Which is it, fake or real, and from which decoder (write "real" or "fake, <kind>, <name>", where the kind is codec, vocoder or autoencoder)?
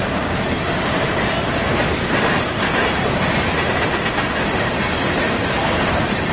fake, vocoder, BigVGAN v2